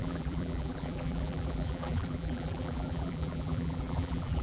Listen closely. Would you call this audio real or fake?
fake